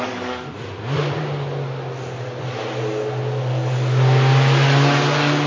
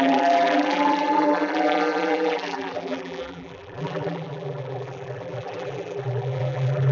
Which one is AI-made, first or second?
second